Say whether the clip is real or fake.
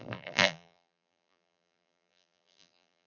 fake